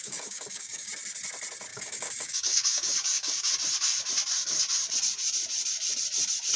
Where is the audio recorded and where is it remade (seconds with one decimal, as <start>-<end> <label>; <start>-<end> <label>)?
0.0-0.9 remade; 0.9-1.7 recorded; 1.7-3.5 remade; 3.5-6.6 recorded